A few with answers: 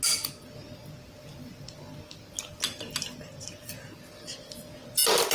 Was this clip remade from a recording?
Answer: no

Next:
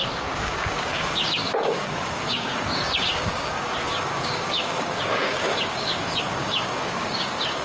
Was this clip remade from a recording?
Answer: yes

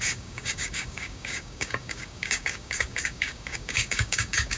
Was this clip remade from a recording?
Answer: yes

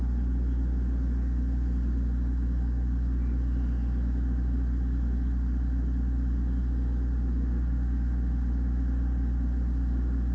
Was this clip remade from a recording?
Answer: no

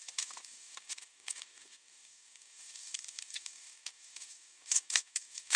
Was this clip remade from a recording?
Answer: yes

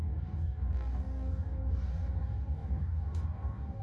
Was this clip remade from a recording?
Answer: yes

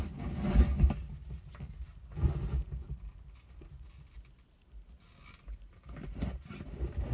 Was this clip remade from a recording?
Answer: no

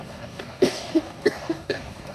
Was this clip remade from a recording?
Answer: yes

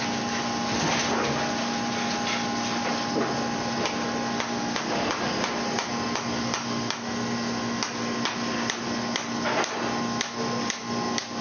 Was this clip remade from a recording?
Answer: no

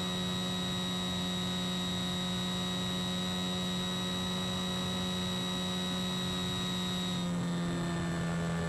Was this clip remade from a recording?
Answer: no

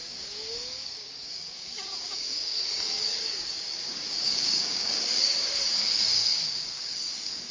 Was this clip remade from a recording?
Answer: yes